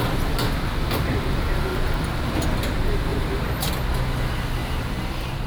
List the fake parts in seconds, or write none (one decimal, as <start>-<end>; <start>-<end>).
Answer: 1.7-2.2; 3.1-3.7; 4.6-5.5